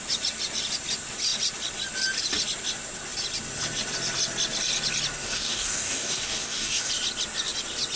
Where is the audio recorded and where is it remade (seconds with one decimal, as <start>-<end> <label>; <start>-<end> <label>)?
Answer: 0.0-5.2 recorded; 5.2-6.9 remade; 6.9-8.0 recorded